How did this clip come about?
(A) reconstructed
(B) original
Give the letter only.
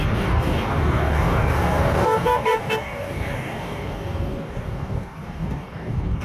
A